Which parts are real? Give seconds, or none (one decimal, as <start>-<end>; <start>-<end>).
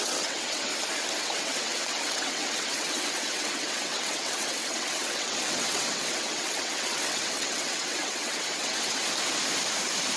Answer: 0.7-1.2; 9.0-10.2